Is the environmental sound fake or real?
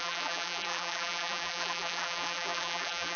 fake